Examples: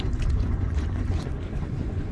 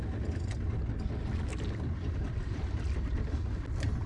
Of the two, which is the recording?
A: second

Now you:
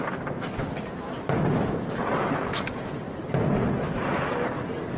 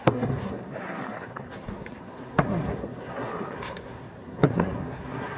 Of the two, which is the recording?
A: first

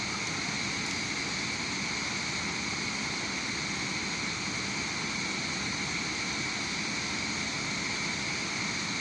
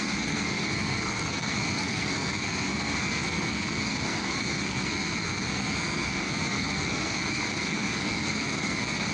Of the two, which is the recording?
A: first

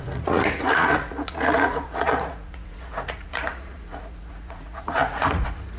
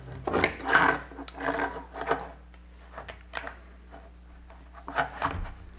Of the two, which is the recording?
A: second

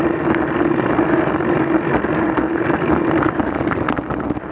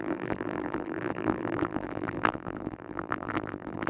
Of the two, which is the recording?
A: first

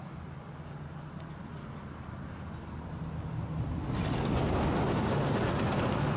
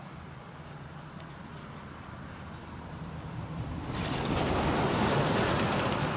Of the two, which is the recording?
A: first